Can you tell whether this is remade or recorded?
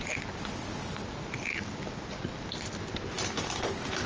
recorded